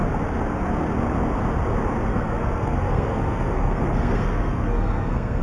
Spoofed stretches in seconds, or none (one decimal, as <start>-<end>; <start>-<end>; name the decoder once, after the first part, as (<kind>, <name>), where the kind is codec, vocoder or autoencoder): 2.1-5.4 (codec, SNAC)